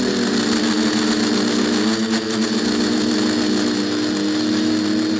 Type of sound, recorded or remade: recorded